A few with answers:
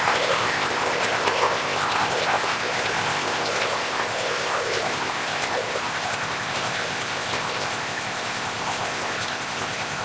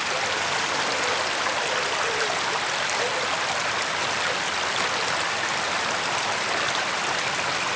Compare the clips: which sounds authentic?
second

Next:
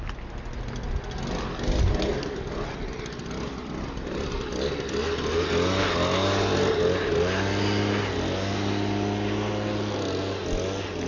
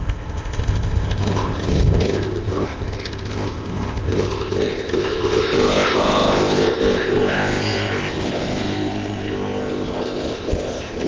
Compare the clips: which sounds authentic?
first